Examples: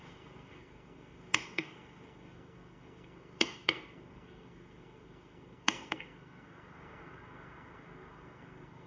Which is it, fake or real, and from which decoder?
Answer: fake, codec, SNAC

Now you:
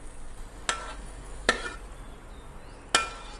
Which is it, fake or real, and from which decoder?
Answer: real